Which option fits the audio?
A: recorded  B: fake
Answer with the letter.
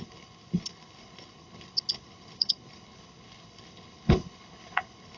B